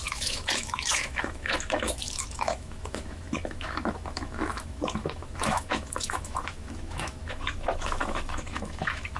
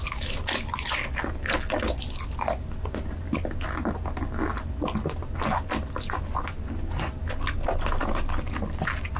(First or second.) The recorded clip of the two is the second